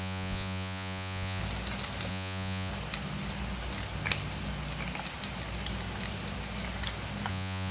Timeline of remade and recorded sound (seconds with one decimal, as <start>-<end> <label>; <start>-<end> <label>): 0.0-1.4 remade; 1.4-2.1 recorded; 2.1-2.7 remade; 2.7-7.3 recorded; 7.3-7.7 remade